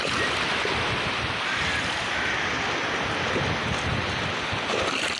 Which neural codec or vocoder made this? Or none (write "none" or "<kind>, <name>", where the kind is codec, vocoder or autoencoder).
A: none